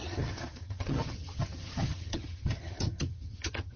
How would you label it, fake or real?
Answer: fake